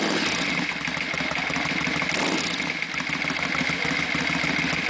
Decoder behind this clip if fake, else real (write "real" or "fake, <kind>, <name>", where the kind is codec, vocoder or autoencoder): real